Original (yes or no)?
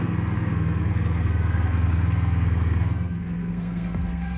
no